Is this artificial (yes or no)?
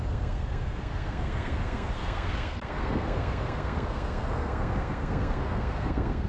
yes